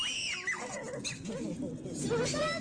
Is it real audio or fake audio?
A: real